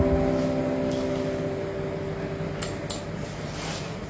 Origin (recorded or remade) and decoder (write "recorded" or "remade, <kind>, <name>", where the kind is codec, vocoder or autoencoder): recorded